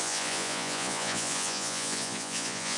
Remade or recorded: remade